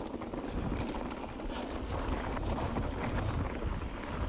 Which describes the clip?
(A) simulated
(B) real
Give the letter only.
B